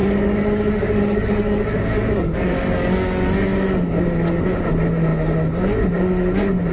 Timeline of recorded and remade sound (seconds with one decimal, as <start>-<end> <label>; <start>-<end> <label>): 0.0-4.0 remade; 4.0-6.7 recorded